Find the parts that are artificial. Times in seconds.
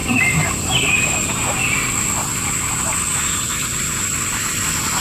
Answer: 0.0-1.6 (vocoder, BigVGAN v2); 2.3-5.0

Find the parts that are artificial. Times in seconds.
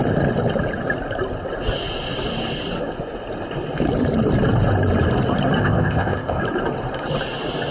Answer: 5.6-6.4 (codec, ZipCodec)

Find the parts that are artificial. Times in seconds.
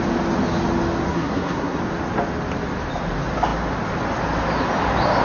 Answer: 1.1-1.8 (codec, SNAC)